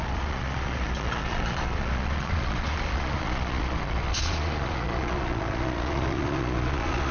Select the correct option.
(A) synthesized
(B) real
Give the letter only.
A